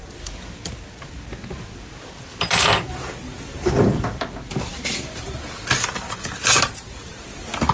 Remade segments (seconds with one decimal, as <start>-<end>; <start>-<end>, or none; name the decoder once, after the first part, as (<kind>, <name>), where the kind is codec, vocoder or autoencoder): none